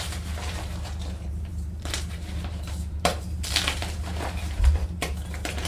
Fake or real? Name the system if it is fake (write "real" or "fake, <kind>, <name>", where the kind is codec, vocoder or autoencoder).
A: fake, vocoder, BigVGAN v2